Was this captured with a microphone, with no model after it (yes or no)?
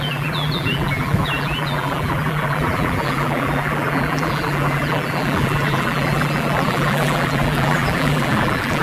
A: no